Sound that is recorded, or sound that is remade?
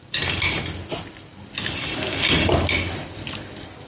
recorded